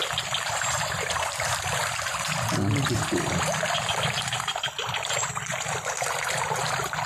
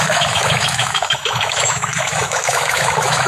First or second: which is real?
first